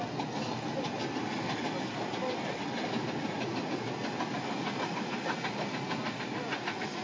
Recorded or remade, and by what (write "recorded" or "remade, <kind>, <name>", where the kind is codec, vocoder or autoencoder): recorded